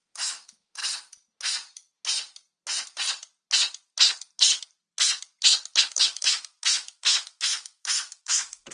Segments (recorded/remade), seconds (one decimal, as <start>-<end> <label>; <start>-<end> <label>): 0.0-0.8 remade; 0.8-5.8 recorded; 5.8-8.7 remade